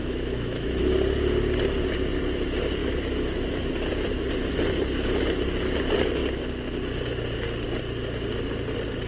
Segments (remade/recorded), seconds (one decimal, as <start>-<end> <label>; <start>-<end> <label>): 0.0-0.8 remade; 0.8-2.8 recorded; 2.8-3.7 remade; 3.7-9.1 recorded